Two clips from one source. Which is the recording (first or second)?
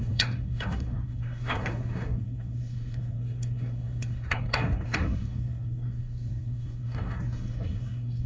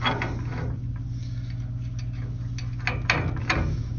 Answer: second